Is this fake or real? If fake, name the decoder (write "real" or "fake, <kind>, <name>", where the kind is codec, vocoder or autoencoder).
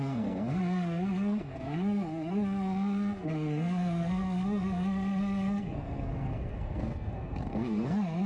fake, codec, SNAC